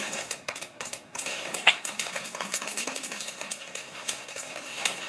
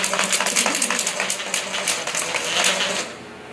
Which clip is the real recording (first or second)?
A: second